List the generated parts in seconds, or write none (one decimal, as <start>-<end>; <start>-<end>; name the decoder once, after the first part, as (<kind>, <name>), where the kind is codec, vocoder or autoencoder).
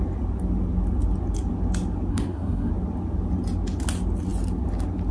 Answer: 2.1-2.7 (codec, SNAC)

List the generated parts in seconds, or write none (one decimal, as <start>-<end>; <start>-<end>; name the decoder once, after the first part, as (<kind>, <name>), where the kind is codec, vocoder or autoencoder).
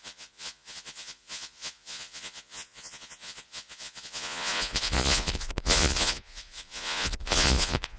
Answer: 0.0-8.0 (vocoder, Vocos)